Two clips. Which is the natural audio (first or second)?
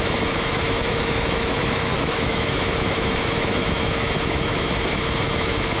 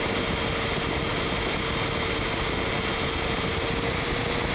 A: second